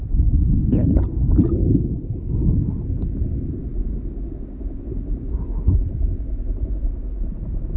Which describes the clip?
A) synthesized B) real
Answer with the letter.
B